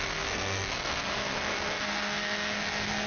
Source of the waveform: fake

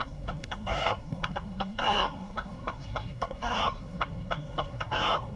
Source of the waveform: fake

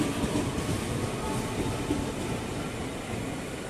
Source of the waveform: real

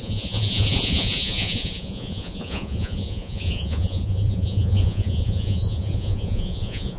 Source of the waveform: fake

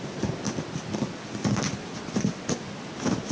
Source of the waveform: real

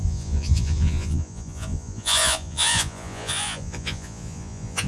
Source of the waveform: fake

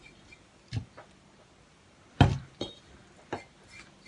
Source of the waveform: real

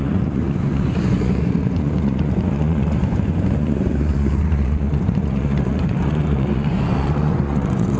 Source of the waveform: fake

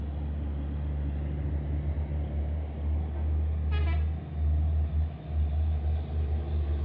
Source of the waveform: real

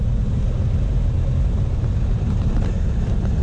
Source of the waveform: real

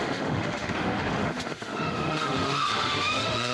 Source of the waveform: fake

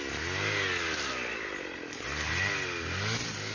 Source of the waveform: real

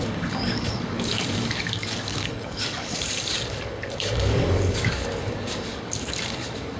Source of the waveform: fake